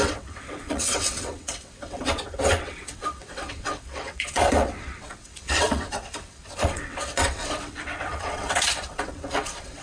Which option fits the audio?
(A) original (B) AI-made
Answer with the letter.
B